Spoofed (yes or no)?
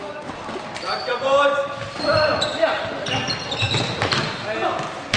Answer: no